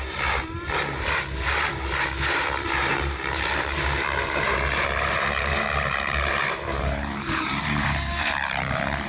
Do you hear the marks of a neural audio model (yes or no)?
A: yes